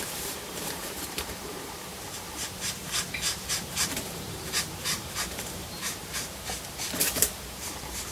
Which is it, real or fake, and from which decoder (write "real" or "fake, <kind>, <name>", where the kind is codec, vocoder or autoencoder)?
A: fake, vocoder, BigVGAN v2